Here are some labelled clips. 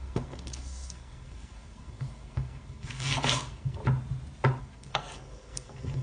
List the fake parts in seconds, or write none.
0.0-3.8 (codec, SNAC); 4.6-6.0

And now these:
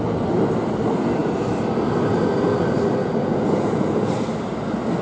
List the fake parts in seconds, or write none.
3.0-4.1 (vocoder, Vocos)